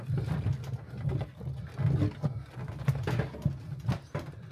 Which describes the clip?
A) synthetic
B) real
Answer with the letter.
B